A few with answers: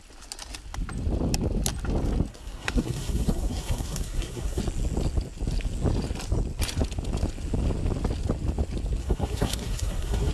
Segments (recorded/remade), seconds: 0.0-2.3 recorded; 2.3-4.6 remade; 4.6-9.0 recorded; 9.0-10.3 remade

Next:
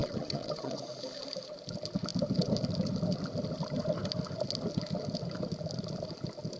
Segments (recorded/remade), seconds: 0.0-0.8 remade; 0.8-6.6 recorded

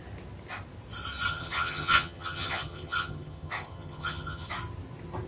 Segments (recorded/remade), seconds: 0.0-1.3 recorded; 1.3-4.5 remade; 4.5-5.3 recorded